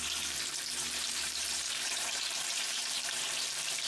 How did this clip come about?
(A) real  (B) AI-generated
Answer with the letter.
B